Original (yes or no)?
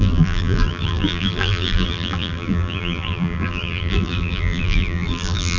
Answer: no